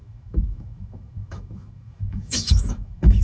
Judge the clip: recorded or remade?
remade